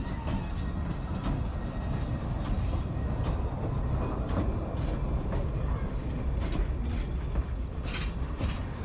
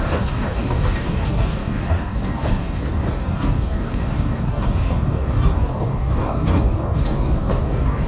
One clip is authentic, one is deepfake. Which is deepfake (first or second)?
second